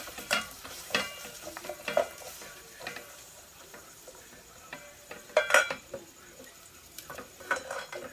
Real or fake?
fake